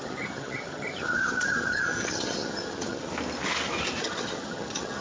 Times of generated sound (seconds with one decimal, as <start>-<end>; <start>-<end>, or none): 0.0-3.1; 4.0-5.0